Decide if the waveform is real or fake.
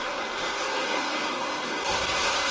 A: fake